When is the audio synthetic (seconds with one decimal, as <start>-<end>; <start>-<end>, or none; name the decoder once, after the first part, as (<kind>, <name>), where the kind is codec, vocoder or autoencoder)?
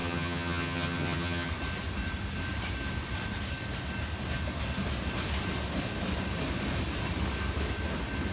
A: 0.0-1.5 (vocoder, HiFi-GAN)